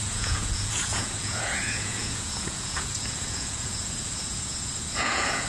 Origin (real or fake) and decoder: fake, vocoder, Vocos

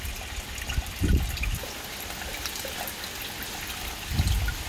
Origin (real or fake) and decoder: real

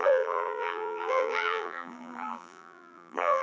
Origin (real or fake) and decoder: fake, vocoder, BigVGAN v2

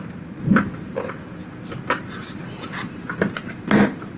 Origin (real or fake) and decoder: real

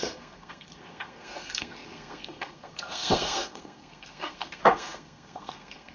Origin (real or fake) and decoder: fake, codec, SNAC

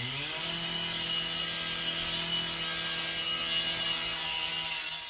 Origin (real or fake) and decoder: real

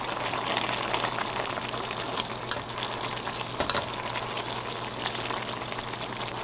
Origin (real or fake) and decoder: real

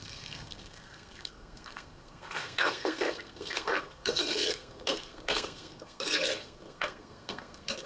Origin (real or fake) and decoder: fake, codec, SNAC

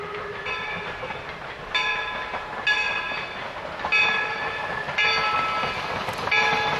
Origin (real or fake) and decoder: real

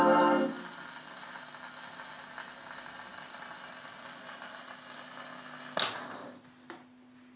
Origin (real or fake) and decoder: real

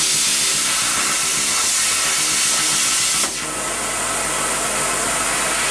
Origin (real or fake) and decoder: real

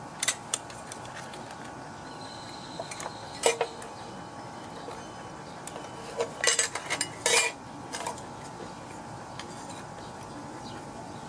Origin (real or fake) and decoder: real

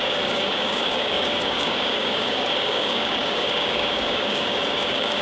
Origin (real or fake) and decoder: fake, codec, DAC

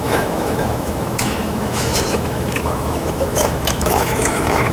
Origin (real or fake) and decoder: fake, autoencoder, DAC-VAE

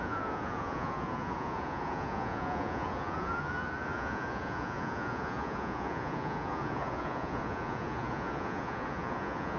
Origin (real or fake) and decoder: fake, vocoder, Vocos